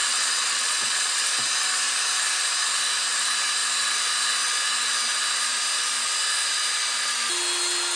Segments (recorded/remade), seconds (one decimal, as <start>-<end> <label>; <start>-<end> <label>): 0.0-1.3 remade; 1.3-8.0 recorded